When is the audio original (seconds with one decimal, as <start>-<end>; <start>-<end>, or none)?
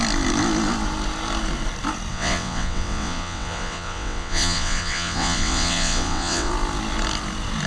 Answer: 0.0-2.1; 6.5-7.7